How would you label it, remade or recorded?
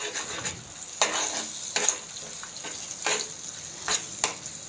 recorded